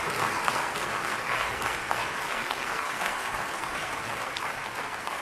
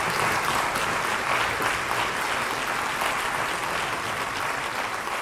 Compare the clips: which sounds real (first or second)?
second